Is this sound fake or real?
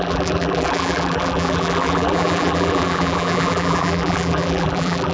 fake